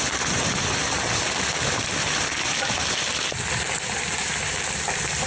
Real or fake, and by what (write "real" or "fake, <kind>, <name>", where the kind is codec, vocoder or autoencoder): real